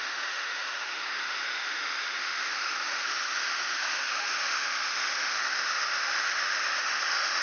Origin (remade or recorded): remade